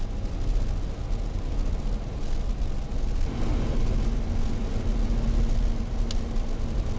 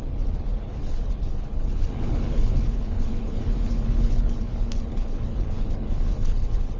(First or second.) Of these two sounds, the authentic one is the first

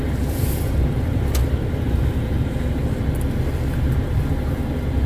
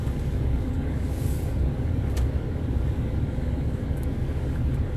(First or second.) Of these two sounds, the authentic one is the first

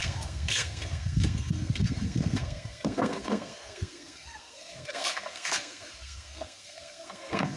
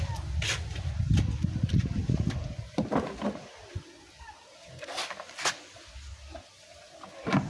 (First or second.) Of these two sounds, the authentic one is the second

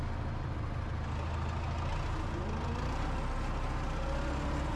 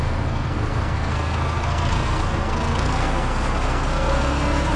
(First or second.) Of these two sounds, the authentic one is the first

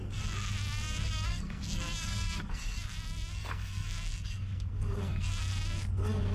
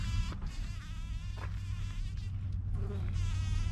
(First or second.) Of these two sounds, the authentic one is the second